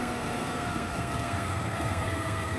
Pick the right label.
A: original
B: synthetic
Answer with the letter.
B